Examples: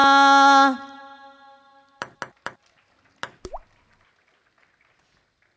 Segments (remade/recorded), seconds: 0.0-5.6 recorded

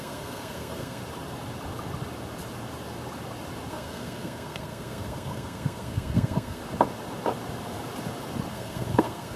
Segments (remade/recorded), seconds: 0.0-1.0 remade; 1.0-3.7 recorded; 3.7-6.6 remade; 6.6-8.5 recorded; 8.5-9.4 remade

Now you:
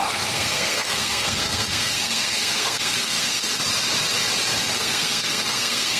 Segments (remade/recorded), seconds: 0.0-3.6 remade; 3.6-4.6 recorded; 4.6-6.0 remade

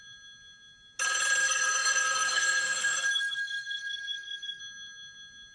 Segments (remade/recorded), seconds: 0.0-1.4 recorded; 1.4-4.6 remade; 4.6-5.5 recorded

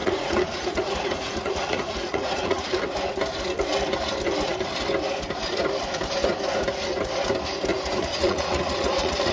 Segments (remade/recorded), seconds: 0.0-2.7 remade; 2.7-7.7 recorded; 7.7-9.3 remade

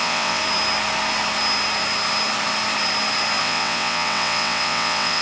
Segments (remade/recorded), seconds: 0.0-0.4 remade; 0.4-3.4 recorded; 3.4-5.2 remade

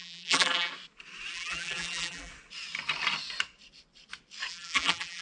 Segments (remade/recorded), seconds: 0.0-0.7 remade; 0.7-1.3 recorded; 1.3-2.3 remade; 2.3-4.5 recorded; 4.5-5.2 remade

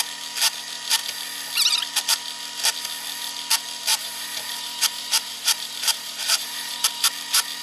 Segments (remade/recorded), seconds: 0.0-3.9 recorded; 3.9-7.1 remade; 7.1-7.6 recorded